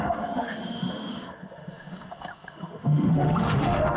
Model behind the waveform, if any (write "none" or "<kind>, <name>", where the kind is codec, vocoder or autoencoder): autoencoder, DAC-VAE